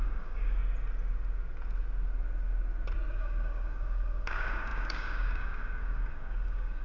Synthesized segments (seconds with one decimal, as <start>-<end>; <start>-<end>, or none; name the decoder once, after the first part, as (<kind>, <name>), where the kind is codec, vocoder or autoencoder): 0.0-0.6 (codec, DAC); 3.1-6.8